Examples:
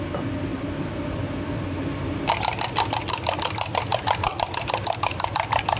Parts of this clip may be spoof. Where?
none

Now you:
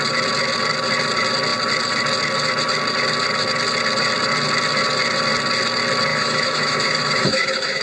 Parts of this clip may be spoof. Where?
6.1-7.8 (autoencoder, DAC-VAE)

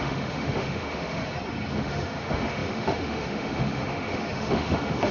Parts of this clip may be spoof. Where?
0.0-1.2 (autoencoder, DAC-VAE); 1.7-5.1

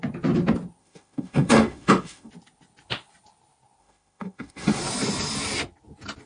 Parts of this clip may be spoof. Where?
0.8-2.3 (autoencoder, DAC-VAE); 3.8-4.8

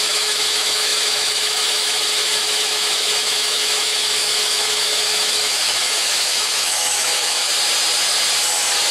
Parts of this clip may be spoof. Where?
0.0-7.5 (autoencoder, DAC-VAE)